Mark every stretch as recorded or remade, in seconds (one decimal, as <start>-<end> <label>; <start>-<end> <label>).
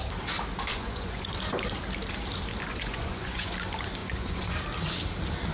0.0-0.7 recorded; 0.7-1.3 remade; 1.3-2.7 recorded; 2.7-3.5 remade; 3.5-4.0 recorded; 4.0-4.6 remade; 4.6-5.5 recorded